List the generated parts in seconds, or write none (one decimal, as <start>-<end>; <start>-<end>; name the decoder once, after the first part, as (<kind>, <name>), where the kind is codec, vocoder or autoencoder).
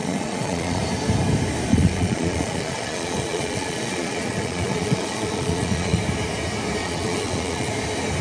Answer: 0.0-0.8 (vocoder, Vocos); 1.7-6.0; 6.8-7.7